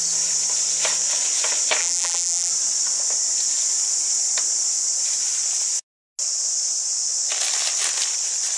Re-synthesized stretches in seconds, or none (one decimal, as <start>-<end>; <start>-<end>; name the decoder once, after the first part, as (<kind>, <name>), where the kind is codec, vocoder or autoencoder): 1.8-2.5 (vocoder, BigVGAN v2)